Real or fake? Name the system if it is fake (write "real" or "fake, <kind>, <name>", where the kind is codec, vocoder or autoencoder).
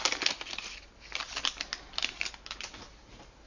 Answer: real